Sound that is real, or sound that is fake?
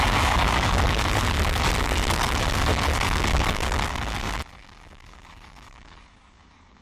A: fake